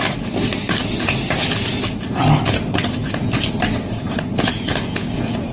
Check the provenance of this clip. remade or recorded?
recorded